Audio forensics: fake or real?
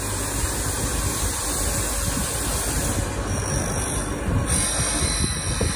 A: real